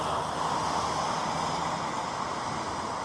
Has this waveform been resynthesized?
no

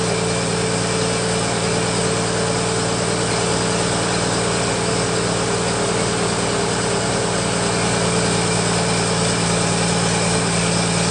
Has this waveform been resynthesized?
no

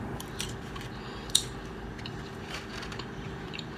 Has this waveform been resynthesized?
yes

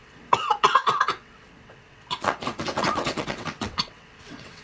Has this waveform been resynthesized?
yes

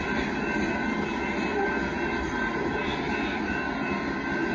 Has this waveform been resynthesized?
no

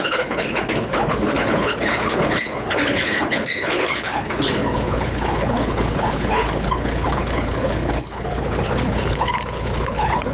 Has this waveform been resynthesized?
yes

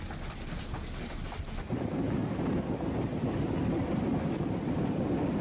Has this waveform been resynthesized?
no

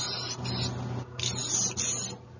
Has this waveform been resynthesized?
no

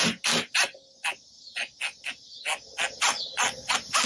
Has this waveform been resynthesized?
no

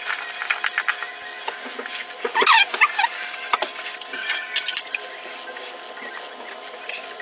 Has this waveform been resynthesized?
no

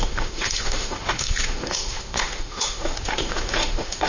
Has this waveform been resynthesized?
yes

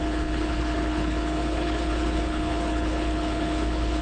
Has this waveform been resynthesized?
yes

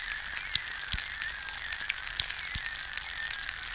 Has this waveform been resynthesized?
no